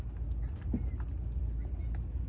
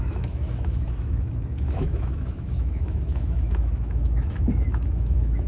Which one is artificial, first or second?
second